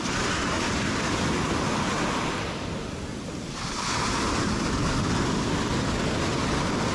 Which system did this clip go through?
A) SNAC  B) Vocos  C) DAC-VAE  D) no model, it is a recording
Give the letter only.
D